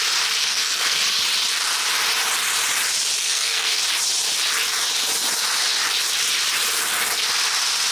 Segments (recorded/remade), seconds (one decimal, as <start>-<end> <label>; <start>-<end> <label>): 0.0-0.4 recorded; 0.4-1.0 remade; 1.0-3.2 recorded; 3.2-3.8 remade; 3.8-7.9 recorded